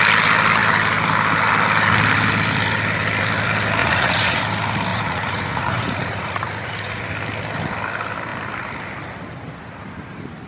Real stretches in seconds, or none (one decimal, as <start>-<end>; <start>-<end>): 0.0-3.8; 4.4-4.9; 7.0-10.5